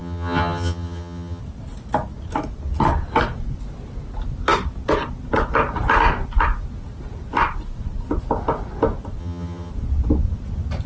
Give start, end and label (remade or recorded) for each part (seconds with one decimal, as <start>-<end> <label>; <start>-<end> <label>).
0.0-1.4 remade; 1.4-9.2 recorded; 9.2-9.7 remade; 9.7-10.9 recorded